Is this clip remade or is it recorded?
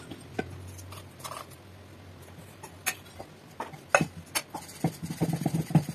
recorded